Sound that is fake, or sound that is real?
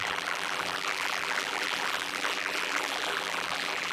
fake